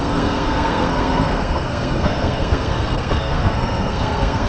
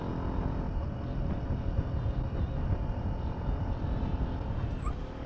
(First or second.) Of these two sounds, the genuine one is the second